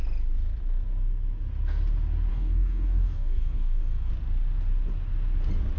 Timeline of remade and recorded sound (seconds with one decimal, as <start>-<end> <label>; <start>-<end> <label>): 0.0-2.3 recorded; 2.3-4.1 remade; 4.1-5.8 recorded